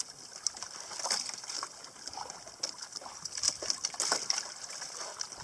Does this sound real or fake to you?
real